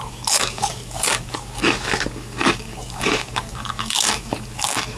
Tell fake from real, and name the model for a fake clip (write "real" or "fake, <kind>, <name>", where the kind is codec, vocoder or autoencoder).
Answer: fake, codec, DAC